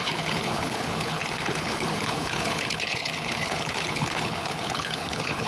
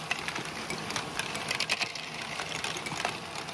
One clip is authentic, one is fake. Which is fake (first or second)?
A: first